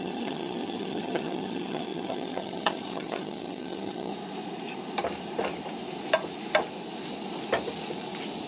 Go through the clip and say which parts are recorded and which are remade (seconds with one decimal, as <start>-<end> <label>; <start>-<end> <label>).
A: 0.0-4.1 remade; 4.1-8.5 recorded